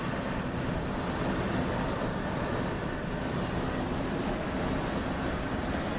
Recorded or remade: remade